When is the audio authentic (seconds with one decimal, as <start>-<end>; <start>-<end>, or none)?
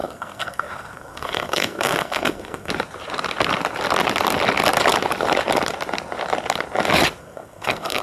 2.7-7.2